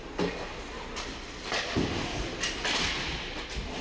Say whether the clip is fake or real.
real